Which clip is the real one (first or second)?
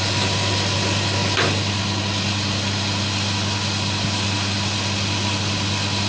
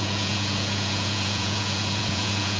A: first